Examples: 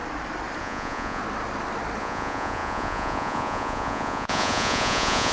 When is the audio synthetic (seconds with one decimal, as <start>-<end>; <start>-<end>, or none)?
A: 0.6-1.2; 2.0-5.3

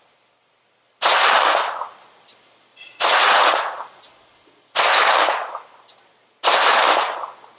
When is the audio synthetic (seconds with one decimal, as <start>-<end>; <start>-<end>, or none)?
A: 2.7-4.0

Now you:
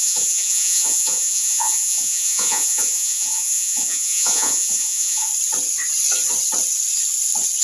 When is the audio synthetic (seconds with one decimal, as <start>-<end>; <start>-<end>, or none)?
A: 0.0-5.3